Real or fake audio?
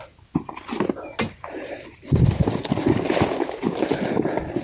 real